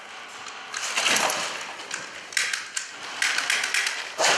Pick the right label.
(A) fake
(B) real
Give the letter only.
B